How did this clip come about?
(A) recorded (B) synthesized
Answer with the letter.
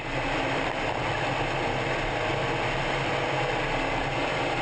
A